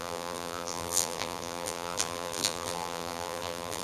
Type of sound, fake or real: fake